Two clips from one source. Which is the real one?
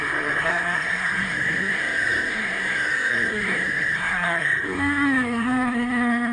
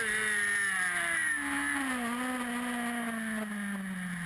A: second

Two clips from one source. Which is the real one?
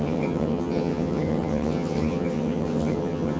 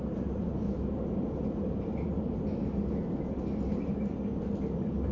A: second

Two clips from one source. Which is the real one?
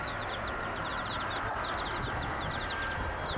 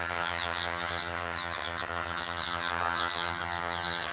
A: first